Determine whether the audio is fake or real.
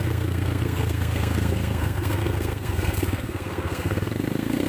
fake